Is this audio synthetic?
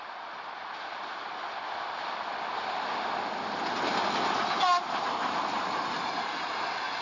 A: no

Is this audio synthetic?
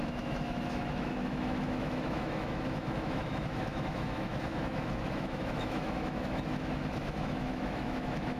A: yes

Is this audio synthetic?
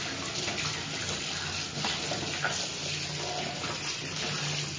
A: no